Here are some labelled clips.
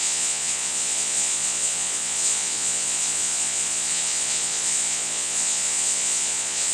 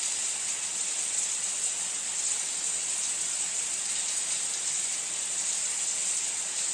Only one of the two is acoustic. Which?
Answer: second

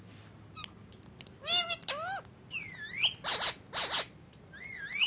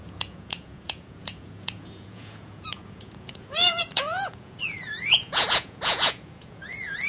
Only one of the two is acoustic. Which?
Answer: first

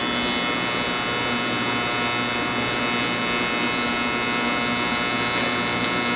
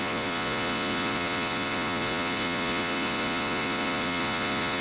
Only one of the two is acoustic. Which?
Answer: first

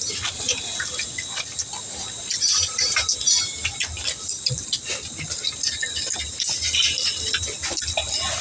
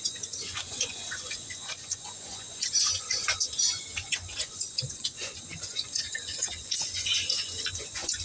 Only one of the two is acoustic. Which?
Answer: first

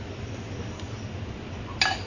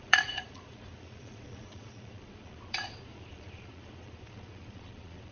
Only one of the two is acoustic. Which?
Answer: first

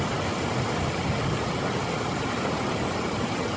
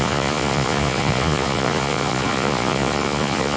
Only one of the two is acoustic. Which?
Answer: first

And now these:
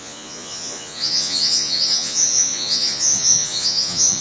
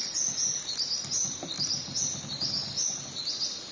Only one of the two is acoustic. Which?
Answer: second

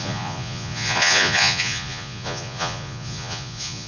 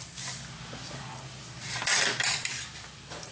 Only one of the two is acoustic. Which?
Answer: second